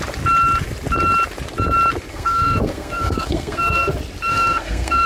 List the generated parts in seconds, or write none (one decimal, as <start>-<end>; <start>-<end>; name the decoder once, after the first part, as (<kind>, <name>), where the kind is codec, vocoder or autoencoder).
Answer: 2.1-3.9 (codec, SNAC); 4.3-5.1